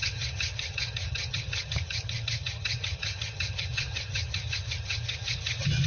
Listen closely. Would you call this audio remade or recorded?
remade